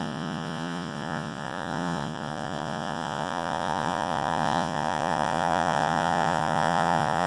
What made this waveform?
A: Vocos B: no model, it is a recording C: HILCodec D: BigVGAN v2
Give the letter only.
A